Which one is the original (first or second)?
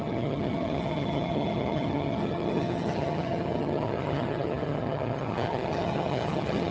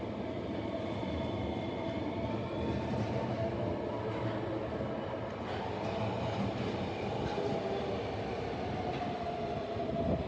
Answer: second